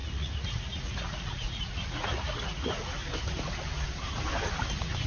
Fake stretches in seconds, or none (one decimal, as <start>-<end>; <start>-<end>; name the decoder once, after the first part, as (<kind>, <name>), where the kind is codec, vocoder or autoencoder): 0.0-3.0 (vocoder, Vocos)